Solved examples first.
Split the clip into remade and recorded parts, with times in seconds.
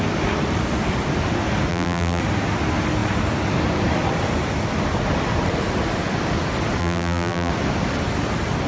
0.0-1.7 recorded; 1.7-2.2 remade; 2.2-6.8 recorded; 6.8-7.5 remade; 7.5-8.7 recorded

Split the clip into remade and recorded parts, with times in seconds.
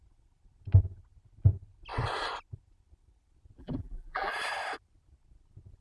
0.0-3.6 recorded; 3.6-4.3 remade; 4.3-5.8 recorded